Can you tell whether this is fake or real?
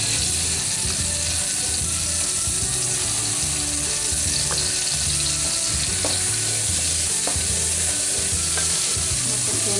real